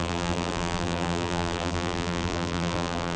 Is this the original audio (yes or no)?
no